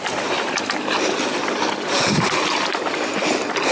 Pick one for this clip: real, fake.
real